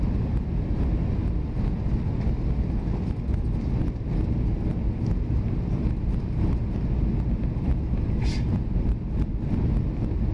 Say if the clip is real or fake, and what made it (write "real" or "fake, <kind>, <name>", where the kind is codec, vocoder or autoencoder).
real